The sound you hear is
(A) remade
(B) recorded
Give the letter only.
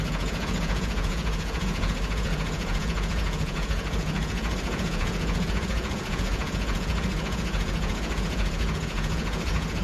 A